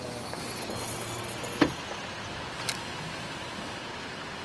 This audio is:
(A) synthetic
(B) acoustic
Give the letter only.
B